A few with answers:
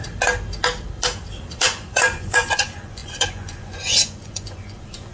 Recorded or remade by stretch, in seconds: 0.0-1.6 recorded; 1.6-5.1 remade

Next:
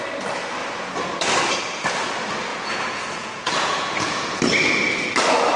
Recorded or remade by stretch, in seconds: 0.0-2.5 recorded; 2.5-4.4 remade; 4.4-5.6 recorded

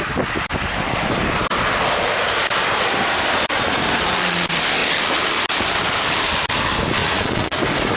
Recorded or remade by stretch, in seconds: 0.0-7.0 recorded; 7.0-7.6 remade; 7.6-8.0 recorded

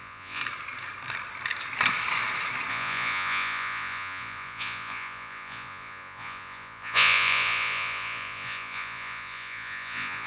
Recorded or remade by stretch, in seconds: 0.0-0.4 remade; 0.4-2.7 recorded; 2.7-10.3 remade

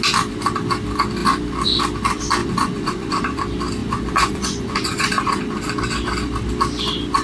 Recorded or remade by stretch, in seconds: 0.0-2.4 recorded; 2.4-3.4 remade; 3.4-3.8 recorded; 3.8-5.4 remade; 5.4-7.2 recorded

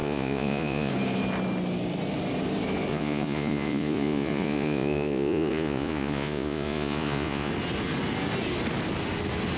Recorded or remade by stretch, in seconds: 0.0-0.9 remade; 0.9-2.9 recorded; 2.9-7.5 remade; 7.5-9.6 recorded

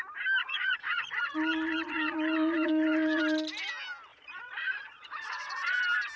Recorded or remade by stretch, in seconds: 0.0-0.4 recorded; 0.4-3.2 remade; 3.2-4.1 recorded; 4.1-5.8 remade; 5.8-6.2 recorded